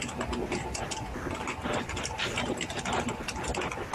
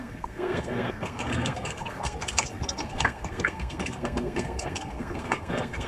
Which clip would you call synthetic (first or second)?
second